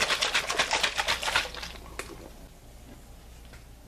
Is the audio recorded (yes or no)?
yes